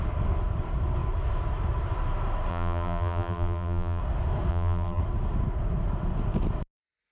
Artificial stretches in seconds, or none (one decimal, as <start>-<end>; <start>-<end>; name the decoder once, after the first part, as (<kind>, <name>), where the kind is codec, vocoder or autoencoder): 2.5-4.0 (vocoder, BigVGAN v2); 4.5-5.0